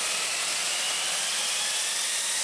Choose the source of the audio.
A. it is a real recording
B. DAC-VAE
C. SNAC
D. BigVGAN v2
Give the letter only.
A